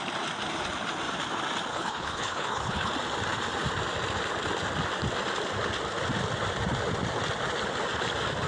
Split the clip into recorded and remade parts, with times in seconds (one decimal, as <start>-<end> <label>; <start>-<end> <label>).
0.0-1.7 recorded; 1.7-2.9 remade; 2.9-8.5 recorded